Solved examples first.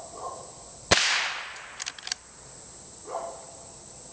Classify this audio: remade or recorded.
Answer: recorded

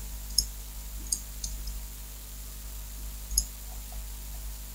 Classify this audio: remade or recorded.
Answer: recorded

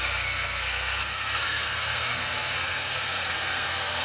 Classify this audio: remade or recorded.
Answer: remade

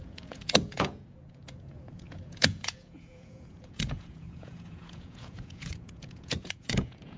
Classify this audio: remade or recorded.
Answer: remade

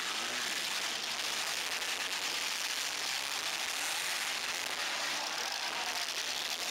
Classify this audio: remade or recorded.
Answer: recorded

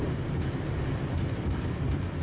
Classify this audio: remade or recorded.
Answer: remade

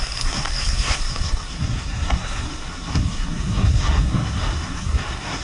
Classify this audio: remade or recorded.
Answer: remade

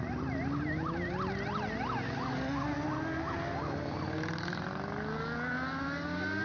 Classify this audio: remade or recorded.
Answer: recorded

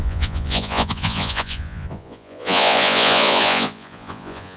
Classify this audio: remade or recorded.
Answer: remade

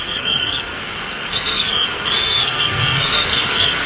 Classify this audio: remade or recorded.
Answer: remade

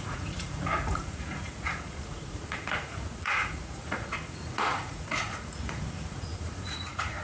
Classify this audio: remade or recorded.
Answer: remade